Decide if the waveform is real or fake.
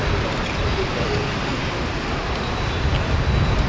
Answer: real